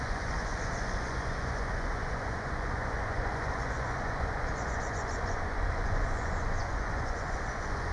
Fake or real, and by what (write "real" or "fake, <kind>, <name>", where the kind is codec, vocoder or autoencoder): fake, vocoder, Vocos